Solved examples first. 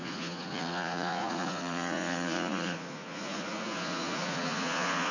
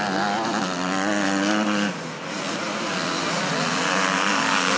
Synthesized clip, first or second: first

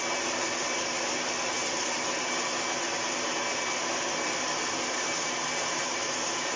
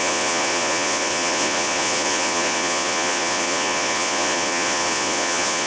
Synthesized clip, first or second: second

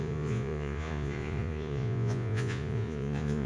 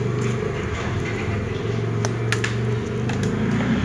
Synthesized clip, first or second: first